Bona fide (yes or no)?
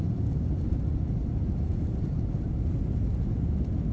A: no